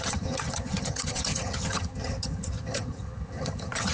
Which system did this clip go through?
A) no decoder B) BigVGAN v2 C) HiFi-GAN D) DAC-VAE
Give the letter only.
C